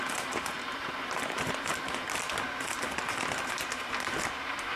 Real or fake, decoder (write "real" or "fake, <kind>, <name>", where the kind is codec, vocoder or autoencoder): real